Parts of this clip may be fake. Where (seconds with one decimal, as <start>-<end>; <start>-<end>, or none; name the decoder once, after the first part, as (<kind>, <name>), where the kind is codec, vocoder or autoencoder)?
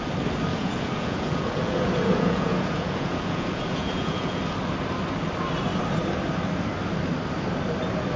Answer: 0.5-4.4 (vocoder, Vocos)